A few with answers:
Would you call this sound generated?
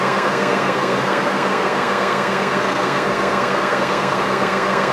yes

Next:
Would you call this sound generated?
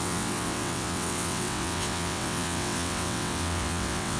yes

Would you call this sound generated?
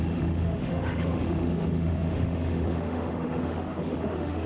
yes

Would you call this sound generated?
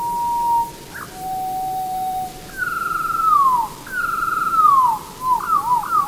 no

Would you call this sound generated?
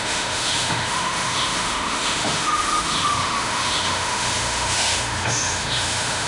yes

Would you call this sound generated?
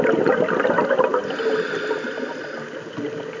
no